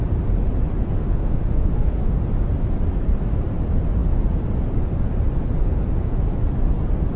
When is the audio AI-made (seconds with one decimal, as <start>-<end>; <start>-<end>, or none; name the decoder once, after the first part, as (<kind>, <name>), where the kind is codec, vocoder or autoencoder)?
1.0-2.2 (autoencoder, DAC-VAE)